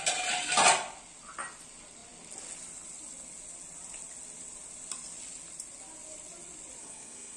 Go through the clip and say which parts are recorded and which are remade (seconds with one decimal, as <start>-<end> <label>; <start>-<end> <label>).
0.0-6.8 recorded; 6.8-7.4 remade